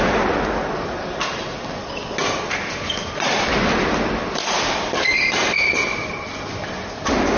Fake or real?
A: real